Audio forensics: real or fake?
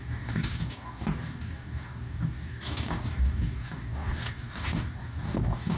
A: fake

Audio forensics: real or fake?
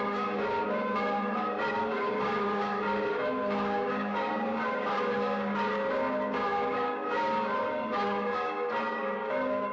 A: fake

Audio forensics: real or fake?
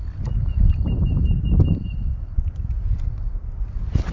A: real